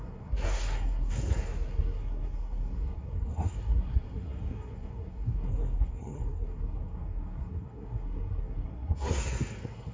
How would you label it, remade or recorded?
remade